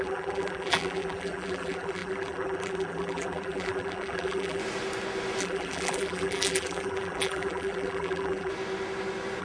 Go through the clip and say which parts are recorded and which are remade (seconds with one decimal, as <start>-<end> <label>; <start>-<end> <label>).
0.0-4.6 remade; 4.6-5.4 recorded; 5.4-8.5 remade; 8.5-9.4 recorded